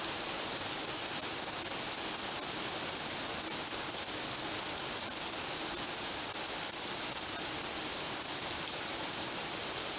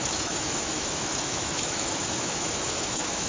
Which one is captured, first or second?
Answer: first